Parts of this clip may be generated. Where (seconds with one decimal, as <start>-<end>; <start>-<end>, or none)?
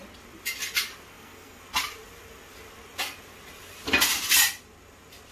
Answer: 1.1-1.6